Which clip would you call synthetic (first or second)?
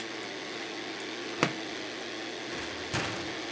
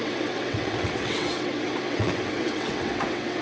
second